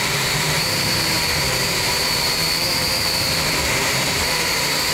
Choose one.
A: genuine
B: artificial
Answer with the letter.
B